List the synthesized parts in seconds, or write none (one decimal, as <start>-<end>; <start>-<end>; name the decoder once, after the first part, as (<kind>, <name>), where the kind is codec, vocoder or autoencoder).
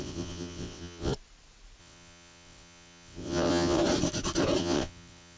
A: 0.0-1.1 (vocoder, WaveNeXt); 1.8-3.8; 4.6-5.4